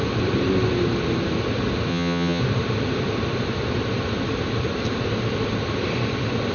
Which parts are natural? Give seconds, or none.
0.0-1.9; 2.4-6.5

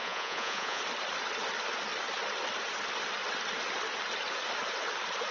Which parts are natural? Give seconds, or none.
0.8-5.3

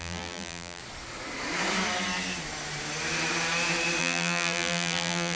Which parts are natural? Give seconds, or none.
0.8-4.0